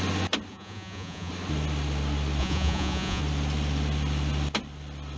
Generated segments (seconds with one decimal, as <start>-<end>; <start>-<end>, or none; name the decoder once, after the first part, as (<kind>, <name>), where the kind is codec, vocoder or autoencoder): 0.5-1.3 (vocoder, Vocos); 2.4-3.2